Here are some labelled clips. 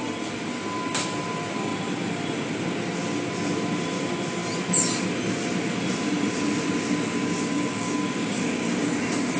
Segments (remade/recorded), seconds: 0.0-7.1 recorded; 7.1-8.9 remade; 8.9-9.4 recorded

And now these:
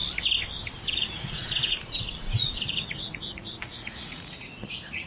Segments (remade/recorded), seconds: 0.0-0.7 recorded; 0.7-5.1 remade

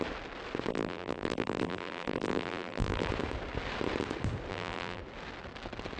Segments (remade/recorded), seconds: 0.0-0.7 recorded; 0.7-3.1 remade; 3.1-4.5 recorded; 4.5-5.0 remade; 5.0-6.0 recorded

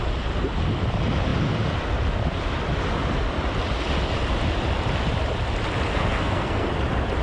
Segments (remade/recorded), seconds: 0.0-5.9 recorded; 5.9-6.7 remade; 6.7-7.2 recorded

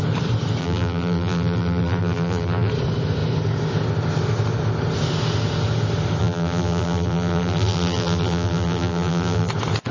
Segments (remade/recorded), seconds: 0.0-0.6 recorded; 0.6-2.7 remade; 2.7-6.2 recorded; 6.2-9.5 remade; 9.5-9.9 recorded

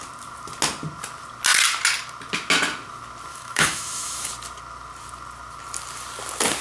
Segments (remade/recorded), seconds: 0.0-3.3 recorded; 3.3-4.3 remade; 4.3-6.6 recorded

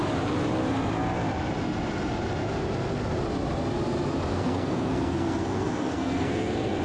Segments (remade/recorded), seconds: 0.0-4.3 recorded; 4.3-6.8 remade

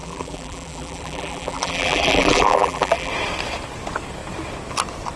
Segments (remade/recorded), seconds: 0.0-3.1 remade; 3.1-5.2 recorded